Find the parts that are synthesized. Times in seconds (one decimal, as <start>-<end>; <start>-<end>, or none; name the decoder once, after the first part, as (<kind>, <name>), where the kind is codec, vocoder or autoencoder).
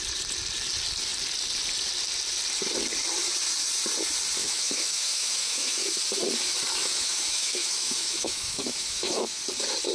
4.4-6.0 (autoencoder, DAC-VAE); 6.8-9.4